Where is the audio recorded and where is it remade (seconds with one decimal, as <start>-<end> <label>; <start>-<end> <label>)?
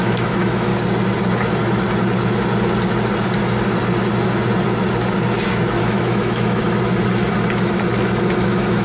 0.0-0.7 remade; 0.7-5.8 recorded; 5.8-6.6 remade; 6.6-8.4 recorded; 8.4-8.8 remade